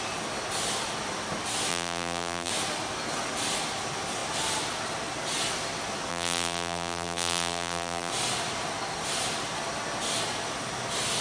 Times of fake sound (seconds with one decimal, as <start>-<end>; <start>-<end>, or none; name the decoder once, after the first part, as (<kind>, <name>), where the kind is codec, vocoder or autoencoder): 1.7-2.5 (vocoder, BigVGAN v2); 6.1-8.1